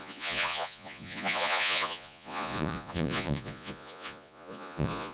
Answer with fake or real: fake